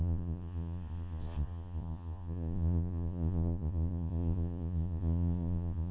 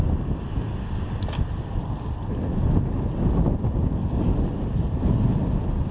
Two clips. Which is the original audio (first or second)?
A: second